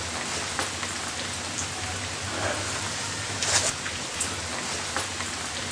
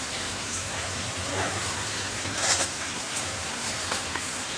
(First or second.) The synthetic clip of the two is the second